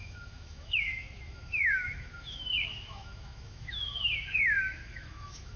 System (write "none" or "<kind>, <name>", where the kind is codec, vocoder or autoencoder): autoencoder, DAC-VAE